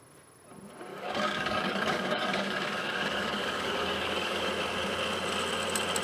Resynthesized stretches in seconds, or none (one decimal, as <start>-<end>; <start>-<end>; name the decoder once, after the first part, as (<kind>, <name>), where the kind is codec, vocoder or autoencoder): 0.9-4.5 (codec, DAC)